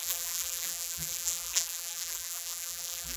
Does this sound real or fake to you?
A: fake